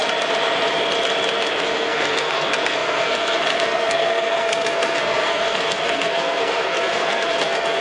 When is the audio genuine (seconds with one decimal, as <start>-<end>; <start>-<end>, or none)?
0.0-1.5